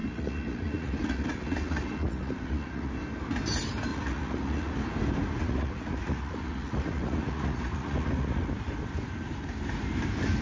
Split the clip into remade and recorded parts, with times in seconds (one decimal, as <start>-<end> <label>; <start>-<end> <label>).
0.0-2.9 remade; 2.9-3.9 recorded; 3.9-4.7 remade; 4.7-5.4 recorded; 5.4-8.5 remade; 8.5-10.4 recorded